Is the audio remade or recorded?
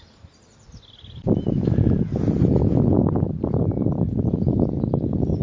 recorded